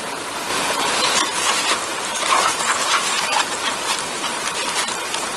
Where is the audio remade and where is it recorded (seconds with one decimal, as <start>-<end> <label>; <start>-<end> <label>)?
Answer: 0.0-0.5 recorded; 0.5-1.2 remade; 1.2-1.9 recorded; 1.9-5.4 remade

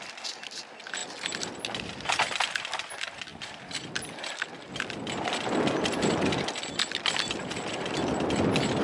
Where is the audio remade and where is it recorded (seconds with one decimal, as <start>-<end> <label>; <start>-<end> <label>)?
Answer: 0.0-8.8 recorded

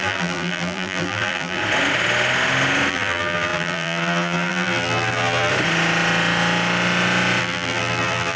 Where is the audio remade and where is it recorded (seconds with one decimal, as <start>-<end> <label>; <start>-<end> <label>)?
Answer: 0.0-1.6 remade; 1.6-2.9 recorded; 2.9-5.5 remade; 5.5-7.4 recorded; 7.4-8.4 remade

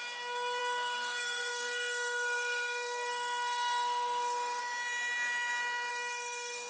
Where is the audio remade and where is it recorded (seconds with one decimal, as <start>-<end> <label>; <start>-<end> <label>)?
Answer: 0.0-0.6 recorded; 0.6-4.6 remade; 4.6-5.9 recorded; 5.9-6.7 remade

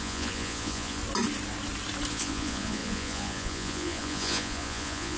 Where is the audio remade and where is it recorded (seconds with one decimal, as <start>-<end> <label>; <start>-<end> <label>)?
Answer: 0.0-1.0 remade; 1.0-2.1 recorded; 2.1-5.2 remade

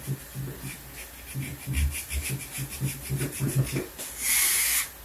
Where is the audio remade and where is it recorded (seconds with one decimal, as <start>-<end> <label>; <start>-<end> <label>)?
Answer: 0.0-5.0 recorded

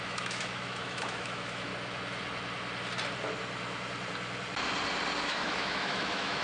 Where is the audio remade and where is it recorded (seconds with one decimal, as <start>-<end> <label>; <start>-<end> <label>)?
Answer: 0.0-1.7 remade; 1.7-5.2 recorded; 5.2-6.4 remade

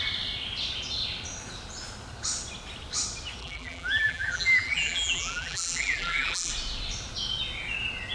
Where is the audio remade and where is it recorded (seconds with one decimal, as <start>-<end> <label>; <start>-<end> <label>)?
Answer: 0.0-3.4 recorded; 3.4-6.5 remade; 6.5-8.1 recorded